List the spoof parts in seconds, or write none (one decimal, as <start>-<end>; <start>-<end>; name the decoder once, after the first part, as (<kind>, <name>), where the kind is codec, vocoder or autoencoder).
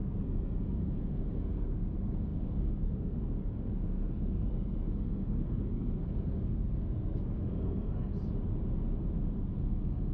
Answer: 0.0-8.1 (codec, SNAC); 9.4-10.1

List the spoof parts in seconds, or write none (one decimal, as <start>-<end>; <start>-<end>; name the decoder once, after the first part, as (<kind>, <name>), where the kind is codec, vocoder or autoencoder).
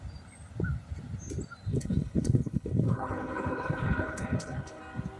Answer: 1.7-4.8 (codec, HILCodec)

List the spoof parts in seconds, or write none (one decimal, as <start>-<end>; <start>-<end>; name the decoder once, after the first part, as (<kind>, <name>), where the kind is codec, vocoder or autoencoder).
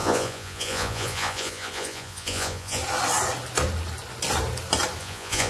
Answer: 0.0-2.8 (vocoder, Vocos); 5.0-5.5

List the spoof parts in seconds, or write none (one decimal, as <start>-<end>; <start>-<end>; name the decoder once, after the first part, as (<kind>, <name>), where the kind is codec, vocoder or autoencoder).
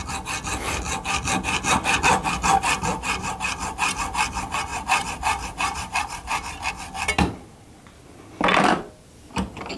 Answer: 4.7-6.7 (vocoder, BigVGAN v2)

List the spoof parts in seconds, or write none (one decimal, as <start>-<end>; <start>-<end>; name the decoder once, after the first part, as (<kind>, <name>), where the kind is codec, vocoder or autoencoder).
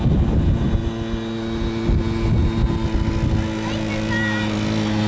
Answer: none